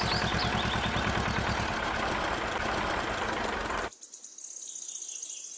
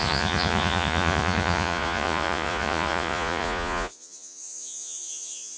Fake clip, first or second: second